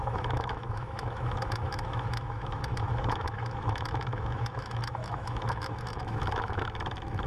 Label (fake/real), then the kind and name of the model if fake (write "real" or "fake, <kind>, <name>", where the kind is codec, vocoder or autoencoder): fake, autoencoder, DAC-VAE